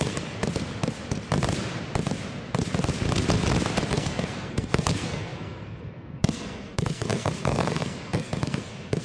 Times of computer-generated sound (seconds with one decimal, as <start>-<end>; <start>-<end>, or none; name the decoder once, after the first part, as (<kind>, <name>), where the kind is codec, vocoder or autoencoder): 0.0-0.4 (codec, SNAC); 3.9-9.0